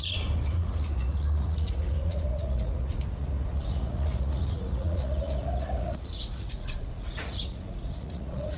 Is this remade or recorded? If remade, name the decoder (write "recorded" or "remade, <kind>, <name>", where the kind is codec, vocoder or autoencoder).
remade, vocoder, Vocos